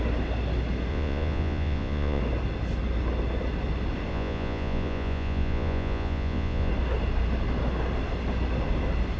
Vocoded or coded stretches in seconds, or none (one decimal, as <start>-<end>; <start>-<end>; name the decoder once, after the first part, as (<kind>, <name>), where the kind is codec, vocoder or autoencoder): 0.9-2.2 (vocoder, Vocos); 4.1-6.7